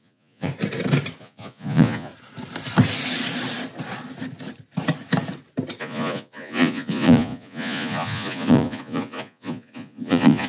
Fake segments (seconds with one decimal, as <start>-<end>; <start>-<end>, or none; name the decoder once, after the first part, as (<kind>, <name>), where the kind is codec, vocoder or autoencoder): 0.0-0.5 (vocoder, Vocos); 1.2-2.1; 5.8-10.5